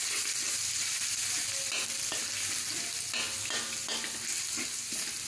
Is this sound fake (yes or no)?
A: no